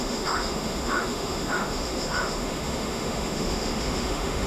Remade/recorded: remade